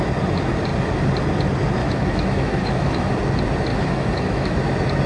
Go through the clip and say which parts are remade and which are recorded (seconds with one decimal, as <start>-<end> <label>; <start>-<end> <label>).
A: 0.0-1.8 recorded; 1.8-3.1 remade; 3.1-3.7 recorded; 3.7-4.6 remade; 4.6-5.1 recorded